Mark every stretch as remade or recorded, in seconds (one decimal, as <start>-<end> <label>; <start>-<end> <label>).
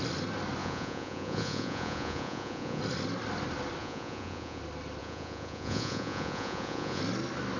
0.0-0.6 recorded; 0.6-2.8 remade; 2.8-3.8 recorded; 3.8-4.6 remade; 4.6-5.0 recorded; 5.0-7.0 remade; 7.0-7.6 recorded